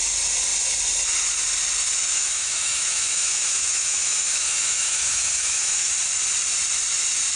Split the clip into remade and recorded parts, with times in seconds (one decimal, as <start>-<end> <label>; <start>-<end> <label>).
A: 0.0-2.1 recorded; 2.1-5.9 remade; 5.9-7.4 recorded